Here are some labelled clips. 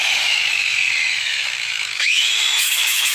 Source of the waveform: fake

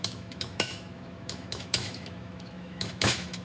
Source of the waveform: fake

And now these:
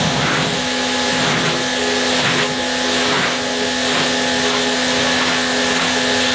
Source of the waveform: real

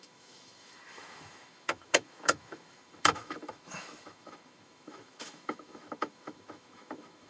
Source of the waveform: fake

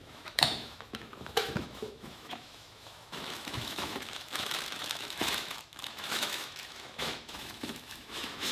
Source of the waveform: fake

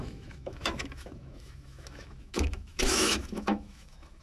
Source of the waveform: fake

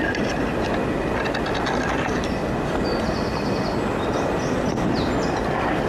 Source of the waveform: real